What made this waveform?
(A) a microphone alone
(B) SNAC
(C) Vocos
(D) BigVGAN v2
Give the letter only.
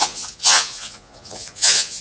C